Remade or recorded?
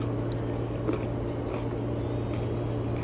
recorded